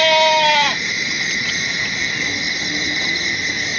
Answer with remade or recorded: recorded